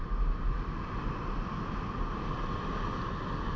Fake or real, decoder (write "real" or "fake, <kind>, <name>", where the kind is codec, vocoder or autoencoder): real